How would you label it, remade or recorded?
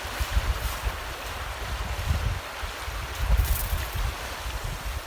remade